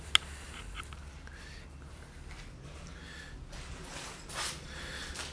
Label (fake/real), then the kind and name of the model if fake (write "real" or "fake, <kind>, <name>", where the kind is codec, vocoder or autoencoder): real